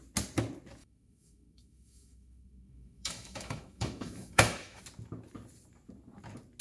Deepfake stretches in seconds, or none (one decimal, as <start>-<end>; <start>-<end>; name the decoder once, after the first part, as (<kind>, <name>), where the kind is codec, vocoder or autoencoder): 0.8-4.8 (autoencoder, DAC-VAE)